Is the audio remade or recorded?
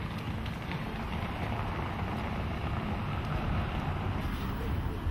recorded